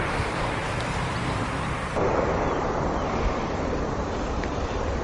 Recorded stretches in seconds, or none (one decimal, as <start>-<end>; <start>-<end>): none